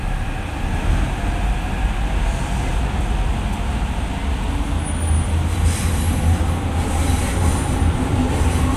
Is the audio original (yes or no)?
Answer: yes